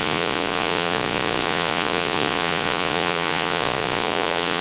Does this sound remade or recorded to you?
remade